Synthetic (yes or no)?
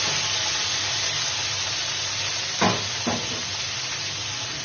no